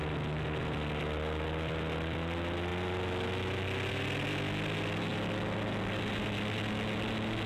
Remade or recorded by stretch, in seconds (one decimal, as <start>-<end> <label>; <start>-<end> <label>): 0.0-7.5 recorded